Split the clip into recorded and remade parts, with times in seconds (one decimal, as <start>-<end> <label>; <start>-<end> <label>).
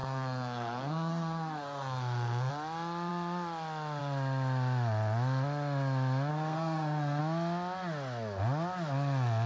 0.0-2.5 remade; 2.5-6.3 recorded; 6.3-7.2 remade; 7.2-9.5 recorded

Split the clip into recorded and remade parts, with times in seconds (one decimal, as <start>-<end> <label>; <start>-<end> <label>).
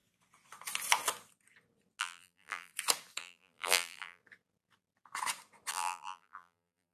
0.0-2.0 recorded; 2.0-2.7 remade; 2.7-3.2 recorded; 3.2-4.2 remade; 4.2-5.7 recorded; 5.7-6.9 remade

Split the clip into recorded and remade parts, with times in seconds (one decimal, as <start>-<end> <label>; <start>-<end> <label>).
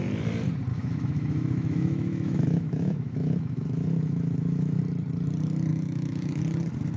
0.0-0.7 recorded; 0.7-4.8 remade; 4.8-5.7 recorded; 5.7-6.4 remade; 6.4-7.0 recorded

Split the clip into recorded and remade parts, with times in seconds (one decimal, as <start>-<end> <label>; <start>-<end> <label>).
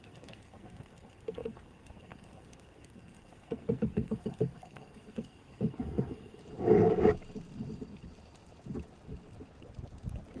0.0-6.4 remade; 6.4-10.4 recorded